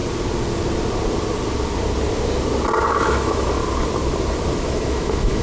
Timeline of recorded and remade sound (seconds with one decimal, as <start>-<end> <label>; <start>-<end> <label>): 0.0-2.9 recorded; 2.9-3.6 remade; 3.6-4.6 recorded; 4.6-5.4 remade